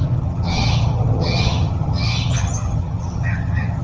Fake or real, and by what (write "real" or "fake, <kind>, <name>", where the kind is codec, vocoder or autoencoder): fake, vocoder, HiFi-GAN